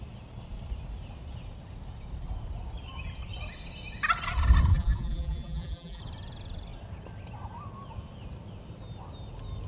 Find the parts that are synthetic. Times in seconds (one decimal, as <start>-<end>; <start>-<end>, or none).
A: 4.7-6.0